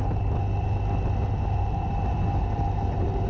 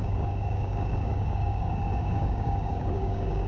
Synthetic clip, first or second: second